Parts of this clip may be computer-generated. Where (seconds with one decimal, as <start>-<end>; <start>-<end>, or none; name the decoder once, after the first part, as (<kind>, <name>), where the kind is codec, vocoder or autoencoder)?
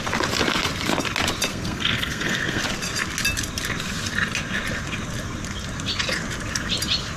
1.5-2.6 (codec, SNAC)